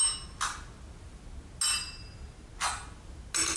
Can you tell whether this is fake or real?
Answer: real